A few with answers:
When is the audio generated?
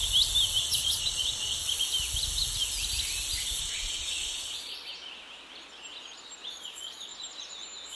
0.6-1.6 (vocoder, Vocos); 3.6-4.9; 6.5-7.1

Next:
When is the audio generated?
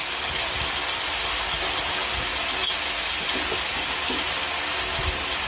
0.0-2.2 (vocoder, BigVGAN v2)